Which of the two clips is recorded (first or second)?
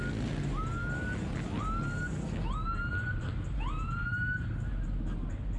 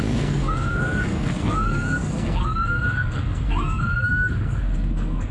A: first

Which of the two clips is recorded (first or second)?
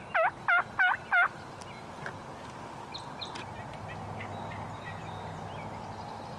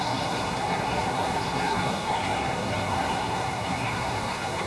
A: first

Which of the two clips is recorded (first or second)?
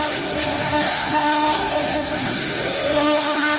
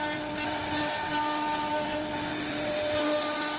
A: second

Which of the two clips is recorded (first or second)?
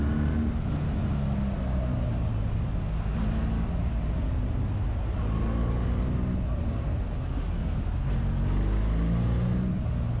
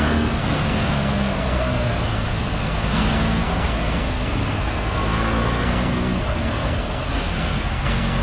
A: first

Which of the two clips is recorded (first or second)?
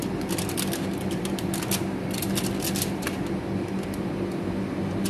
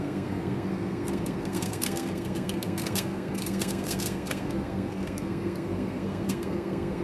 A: first